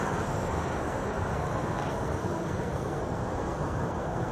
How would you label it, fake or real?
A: fake